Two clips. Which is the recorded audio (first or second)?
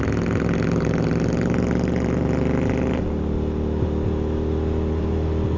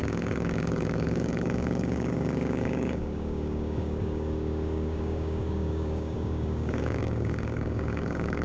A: first